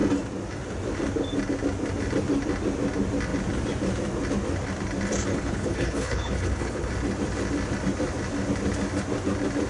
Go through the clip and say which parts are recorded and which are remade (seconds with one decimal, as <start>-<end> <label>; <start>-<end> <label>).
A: 0.0-5.3 recorded; 5.3-6.9 remade; 6.9-9.7 recorded